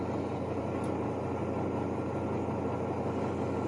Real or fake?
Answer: real